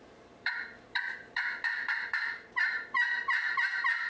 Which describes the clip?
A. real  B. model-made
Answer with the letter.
B